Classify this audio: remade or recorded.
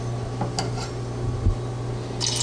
recorded